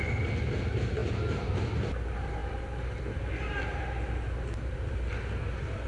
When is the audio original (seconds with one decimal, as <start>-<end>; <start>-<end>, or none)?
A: 0.0-5.9